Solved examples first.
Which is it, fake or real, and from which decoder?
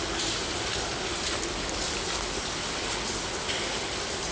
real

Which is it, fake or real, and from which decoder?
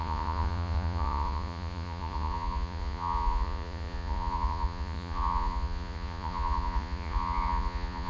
fake, vocoder, Vocos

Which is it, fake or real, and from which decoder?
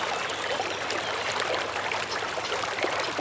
real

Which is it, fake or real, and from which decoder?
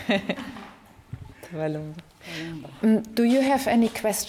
real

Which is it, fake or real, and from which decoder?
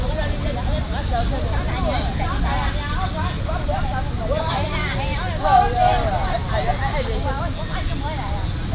real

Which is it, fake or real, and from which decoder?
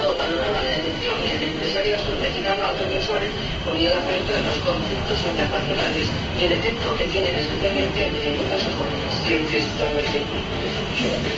fake, autoencoder, DAC-VAE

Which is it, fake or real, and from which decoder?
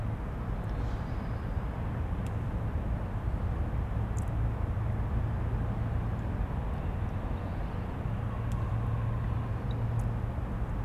real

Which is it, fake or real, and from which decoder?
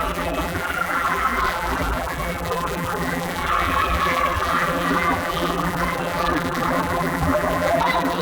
fake, vocoder, BigVGAN v2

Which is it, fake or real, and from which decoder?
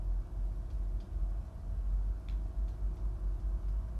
real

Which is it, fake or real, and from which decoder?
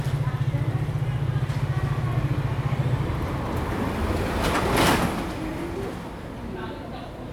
real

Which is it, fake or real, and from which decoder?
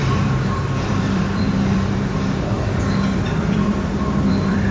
fake, vocoder, BigVGAN v2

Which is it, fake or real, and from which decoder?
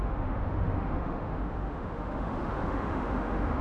fake, autoencoder, DAC-VAE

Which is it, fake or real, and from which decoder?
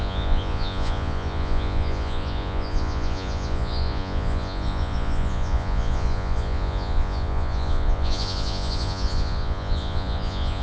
fake, vocoder, Vocos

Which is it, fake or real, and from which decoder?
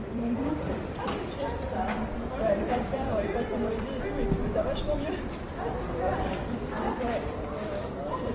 fake, vocoder, BigVGAN v2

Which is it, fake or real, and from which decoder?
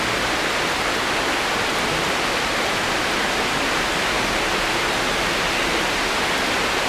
real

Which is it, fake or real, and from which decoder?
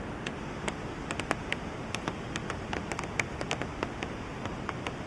real